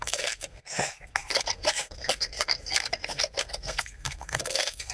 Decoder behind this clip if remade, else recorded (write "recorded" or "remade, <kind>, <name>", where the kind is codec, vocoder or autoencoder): remade, codec, SNAC